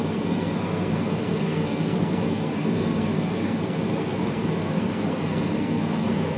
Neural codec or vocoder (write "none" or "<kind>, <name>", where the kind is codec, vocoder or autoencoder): codec, SNAC